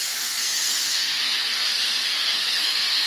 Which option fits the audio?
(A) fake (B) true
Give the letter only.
A